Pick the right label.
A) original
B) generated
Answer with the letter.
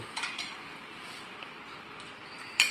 B